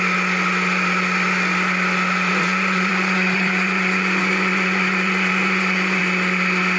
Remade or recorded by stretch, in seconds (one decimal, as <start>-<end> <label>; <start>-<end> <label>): 0.0-2.3 recorded; 2.3-6.0 remade; 6.0-6.8 recorded